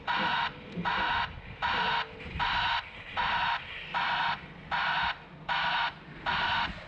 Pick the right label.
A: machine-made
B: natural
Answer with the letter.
B